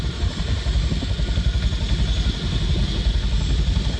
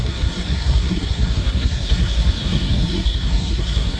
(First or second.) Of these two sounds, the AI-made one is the second